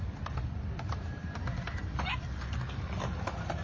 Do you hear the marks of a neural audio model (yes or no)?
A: no